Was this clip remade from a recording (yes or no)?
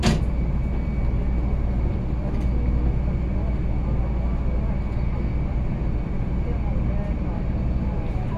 no